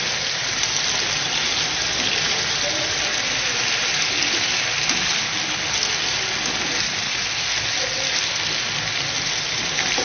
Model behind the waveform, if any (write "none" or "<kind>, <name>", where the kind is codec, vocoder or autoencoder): none